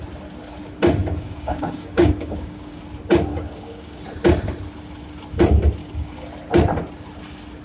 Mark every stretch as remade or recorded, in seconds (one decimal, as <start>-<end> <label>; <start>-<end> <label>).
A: 0.0-1.0 recorded; 1.0-2.8 remade; 2.8-3.3 recorded; 3.3-4.0 remade; 4.0-5.8 recorded; 5.8-6.3 remade; 6.3-7.6 recorded